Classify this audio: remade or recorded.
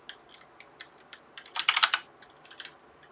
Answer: recorded